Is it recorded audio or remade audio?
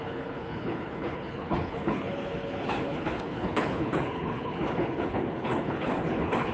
remade